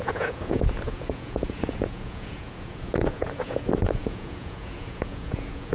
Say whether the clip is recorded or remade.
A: remade